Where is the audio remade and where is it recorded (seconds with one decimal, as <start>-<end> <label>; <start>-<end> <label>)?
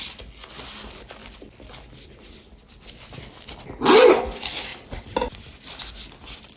0.0-6.6 recorded